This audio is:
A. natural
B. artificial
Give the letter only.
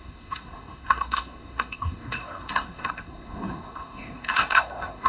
B